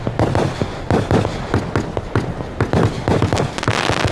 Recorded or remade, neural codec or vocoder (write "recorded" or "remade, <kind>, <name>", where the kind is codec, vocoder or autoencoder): recorded